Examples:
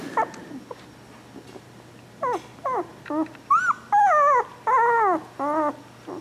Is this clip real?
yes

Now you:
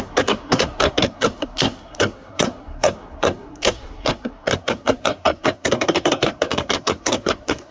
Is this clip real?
no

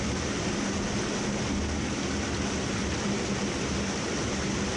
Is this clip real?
yes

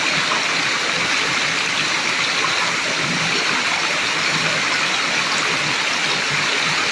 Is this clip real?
yes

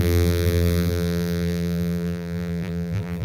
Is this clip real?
no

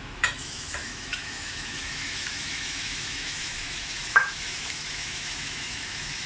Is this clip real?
no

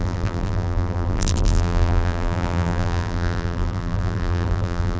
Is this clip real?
no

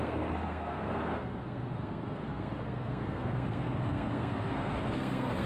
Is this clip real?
no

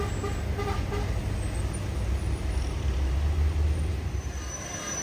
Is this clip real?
yes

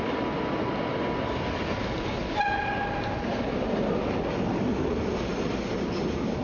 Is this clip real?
yes